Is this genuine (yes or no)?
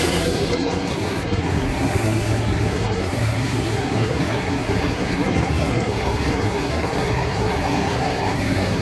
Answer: no